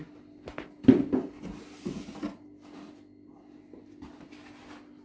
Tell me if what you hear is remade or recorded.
recorded